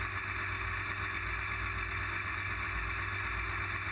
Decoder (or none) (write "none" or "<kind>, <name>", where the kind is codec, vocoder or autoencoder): none